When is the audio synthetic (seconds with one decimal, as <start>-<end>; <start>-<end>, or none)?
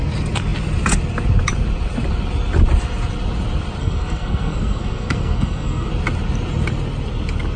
3.8-5.9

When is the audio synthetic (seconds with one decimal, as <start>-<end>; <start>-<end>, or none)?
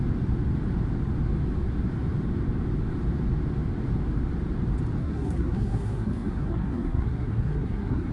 5.0-8.1